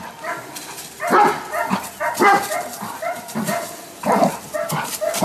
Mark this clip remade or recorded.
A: recorded